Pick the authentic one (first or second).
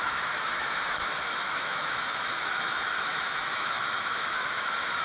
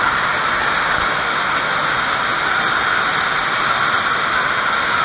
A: second